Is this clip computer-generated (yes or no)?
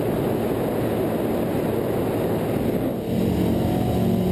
no